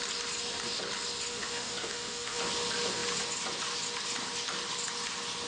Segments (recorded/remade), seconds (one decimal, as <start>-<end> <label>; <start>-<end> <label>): 0.0-1.3 recorded; 1.3-2.4 remade; 2.4-5.5 recorded